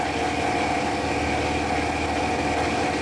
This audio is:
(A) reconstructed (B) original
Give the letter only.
B